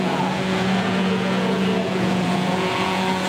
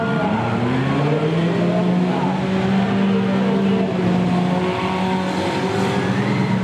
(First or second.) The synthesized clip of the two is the first